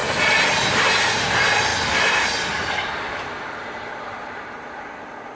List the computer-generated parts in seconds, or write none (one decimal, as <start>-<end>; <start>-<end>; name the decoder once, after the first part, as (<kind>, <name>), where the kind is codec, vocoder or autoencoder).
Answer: 1.7-4.9 (vocoder, BigVGAN v2)